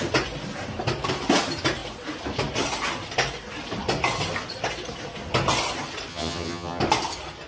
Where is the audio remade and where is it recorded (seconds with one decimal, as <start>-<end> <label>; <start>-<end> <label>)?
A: 0.0-6.1 recorded; 6.1-6.8 remade; 6.8-7.5 recorded